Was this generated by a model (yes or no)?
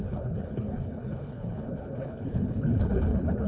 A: yes